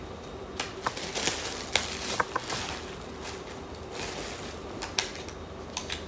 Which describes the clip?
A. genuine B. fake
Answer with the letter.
A